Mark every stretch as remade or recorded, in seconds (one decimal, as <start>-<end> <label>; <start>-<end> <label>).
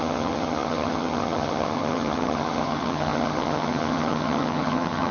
0.0-5.1 remade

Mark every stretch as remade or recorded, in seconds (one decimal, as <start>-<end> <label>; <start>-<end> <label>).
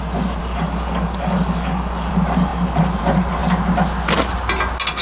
0.0-0.4 recorded; 0.4-2.1 remade; 2.1-5.0 recorded